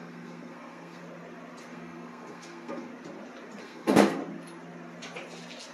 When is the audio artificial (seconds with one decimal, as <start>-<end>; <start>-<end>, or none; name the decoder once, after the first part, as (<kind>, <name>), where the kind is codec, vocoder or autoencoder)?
0.0-1.0 (codec, SNAC); 1.6-2.9; 3.6-4.2